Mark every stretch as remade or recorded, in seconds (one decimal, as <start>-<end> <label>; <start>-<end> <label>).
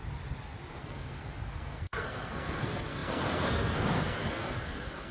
0.0-0.7 recorded; 0.7-5.1 remade